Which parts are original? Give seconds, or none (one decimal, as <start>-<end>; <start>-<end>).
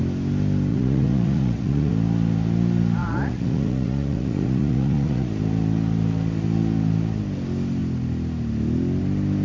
0.0-0.7; 1.9-3.0; 5.3-9.4